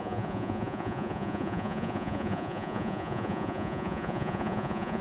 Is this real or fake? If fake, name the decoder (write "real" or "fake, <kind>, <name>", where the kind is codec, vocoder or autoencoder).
fake, vocoder, Vocos